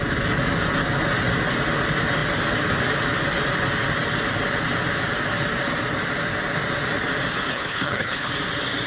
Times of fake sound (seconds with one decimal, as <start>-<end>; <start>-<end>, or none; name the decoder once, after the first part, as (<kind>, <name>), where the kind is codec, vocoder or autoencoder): 7.5-8.3 (codec, HILCodec)